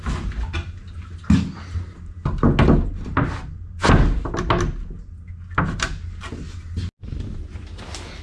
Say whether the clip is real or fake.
real